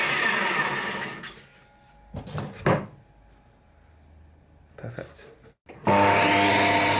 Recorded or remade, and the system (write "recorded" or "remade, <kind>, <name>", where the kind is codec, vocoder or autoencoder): recorded